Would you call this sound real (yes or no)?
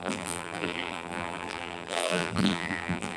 no